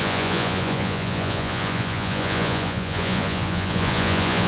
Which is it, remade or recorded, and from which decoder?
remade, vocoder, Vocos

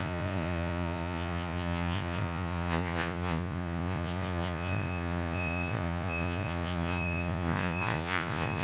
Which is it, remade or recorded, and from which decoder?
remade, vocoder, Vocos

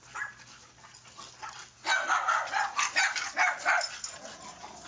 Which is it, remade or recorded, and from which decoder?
recorded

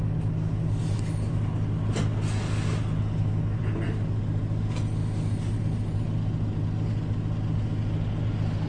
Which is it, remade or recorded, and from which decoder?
recorded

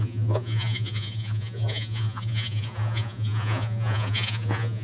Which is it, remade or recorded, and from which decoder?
remade, vocoder, Vocos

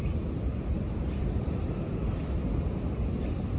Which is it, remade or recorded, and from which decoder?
recorded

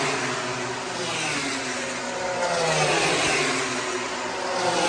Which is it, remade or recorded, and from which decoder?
recorded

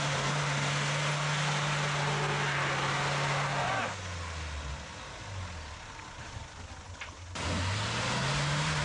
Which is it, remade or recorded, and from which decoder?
recorded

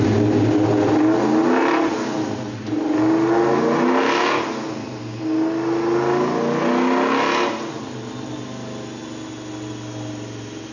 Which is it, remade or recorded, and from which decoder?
recorded